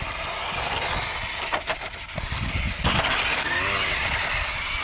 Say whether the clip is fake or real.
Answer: real